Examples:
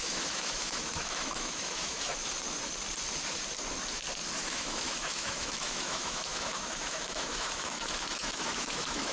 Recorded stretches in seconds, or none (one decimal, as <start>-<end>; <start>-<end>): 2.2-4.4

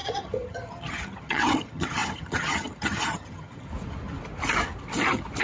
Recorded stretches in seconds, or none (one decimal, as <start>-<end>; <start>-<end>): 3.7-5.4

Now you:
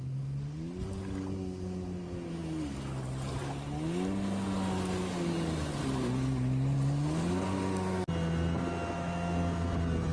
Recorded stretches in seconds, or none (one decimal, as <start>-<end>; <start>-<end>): 0.0-10.1

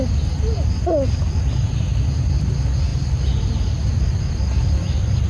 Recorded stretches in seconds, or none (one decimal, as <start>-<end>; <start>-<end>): 0.0-5.3